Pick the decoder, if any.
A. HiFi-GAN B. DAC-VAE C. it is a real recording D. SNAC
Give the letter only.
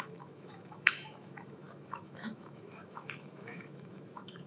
B